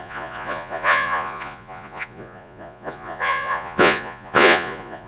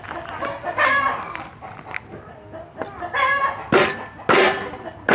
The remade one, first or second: first